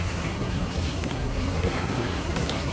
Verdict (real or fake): fake